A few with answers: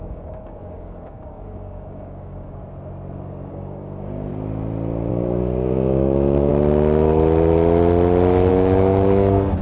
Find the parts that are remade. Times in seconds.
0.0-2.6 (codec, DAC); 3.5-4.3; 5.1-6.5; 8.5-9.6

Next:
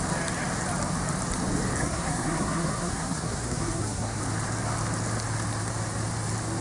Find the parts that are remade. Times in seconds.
1.8-4.2 (codec, SNAC)

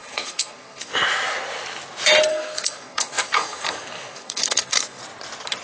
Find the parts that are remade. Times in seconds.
0.0-0.9 (codec, SNAC); 2.3-5.0

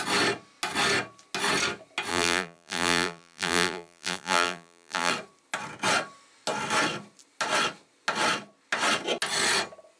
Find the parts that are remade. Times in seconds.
2.1-5.1 (vocoder, BigVGAN v2)

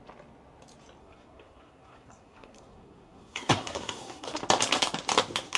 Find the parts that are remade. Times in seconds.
1.0-4.4 (codec, SNAC)

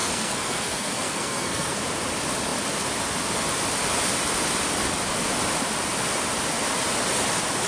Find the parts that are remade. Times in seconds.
0.0-1.8 (codec, SNAC)